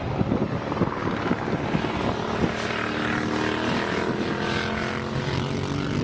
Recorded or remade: recorded